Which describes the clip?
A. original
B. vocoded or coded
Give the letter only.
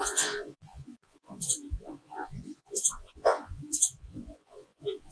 B